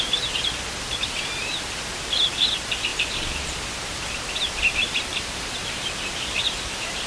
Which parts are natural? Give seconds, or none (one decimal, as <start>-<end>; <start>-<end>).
0.0-2.9; 3.7-5.1